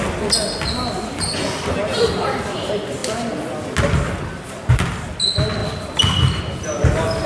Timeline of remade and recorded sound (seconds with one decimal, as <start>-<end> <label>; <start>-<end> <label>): 0.0-5.6 recorded; 5.6-6.4 remade; 6.4-7.3 recorded